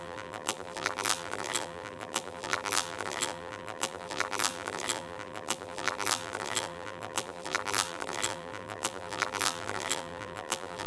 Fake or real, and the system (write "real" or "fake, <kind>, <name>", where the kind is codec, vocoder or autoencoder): fake, vocoder, BigVGAN v2